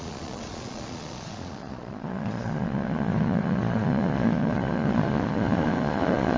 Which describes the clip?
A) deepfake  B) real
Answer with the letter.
A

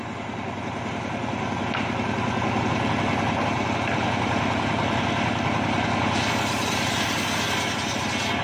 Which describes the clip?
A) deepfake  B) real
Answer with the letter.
B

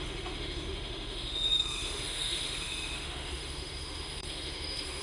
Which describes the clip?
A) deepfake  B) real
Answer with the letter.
A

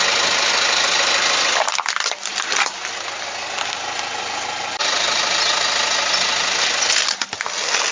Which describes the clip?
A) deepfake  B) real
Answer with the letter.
B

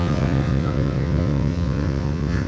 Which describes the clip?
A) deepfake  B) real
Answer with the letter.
A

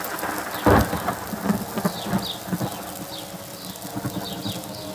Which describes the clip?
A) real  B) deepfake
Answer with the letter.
A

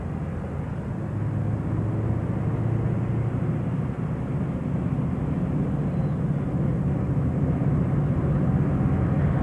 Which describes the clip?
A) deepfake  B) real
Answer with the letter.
B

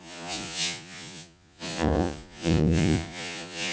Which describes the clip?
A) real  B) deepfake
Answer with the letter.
B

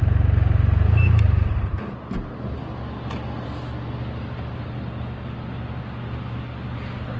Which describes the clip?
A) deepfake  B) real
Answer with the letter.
B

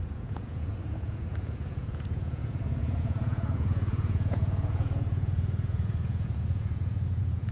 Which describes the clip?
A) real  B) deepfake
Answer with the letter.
B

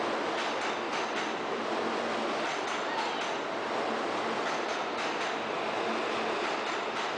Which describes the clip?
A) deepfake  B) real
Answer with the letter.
B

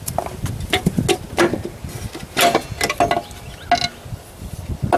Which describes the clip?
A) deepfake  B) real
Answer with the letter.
B